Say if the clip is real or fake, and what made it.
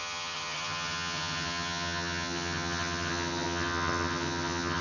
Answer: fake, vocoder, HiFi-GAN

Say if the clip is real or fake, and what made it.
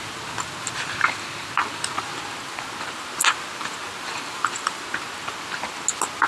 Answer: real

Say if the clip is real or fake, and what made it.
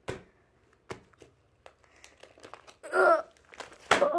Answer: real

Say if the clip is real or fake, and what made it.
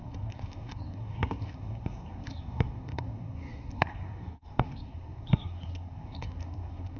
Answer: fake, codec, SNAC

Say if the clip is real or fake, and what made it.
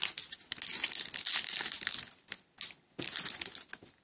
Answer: real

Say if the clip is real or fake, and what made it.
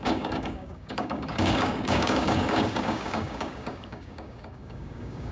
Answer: fake, codec, DAC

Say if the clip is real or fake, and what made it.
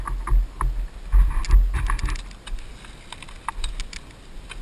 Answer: real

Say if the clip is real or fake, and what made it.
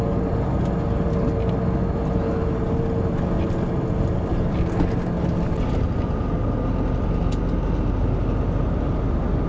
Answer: real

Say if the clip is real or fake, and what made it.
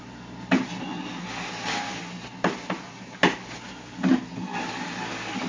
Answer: real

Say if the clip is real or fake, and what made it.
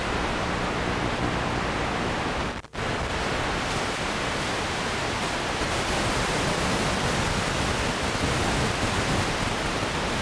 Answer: real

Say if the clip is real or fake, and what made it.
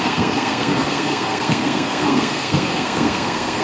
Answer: fake, codec, SNAC